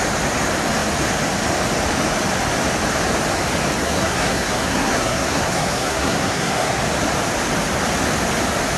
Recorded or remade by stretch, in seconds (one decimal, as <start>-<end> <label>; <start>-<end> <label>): 0.0-3.8 recorded; 3.8-6.8 remade; 6.8-8.8 recorded